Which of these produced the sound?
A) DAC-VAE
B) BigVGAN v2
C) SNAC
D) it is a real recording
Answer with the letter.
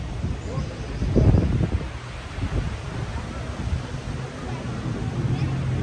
D